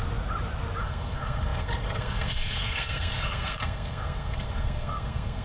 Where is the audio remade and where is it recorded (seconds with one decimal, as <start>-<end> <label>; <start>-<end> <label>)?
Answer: 0.0-0.8 recorded; 0.8-5.4 remade